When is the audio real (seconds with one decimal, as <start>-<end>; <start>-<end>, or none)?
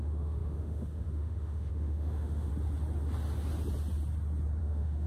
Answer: 2.5-4.6